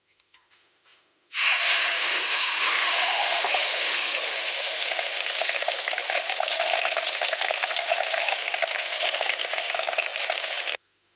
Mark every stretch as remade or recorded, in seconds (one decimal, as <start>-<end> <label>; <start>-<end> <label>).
0.0-11.2 remade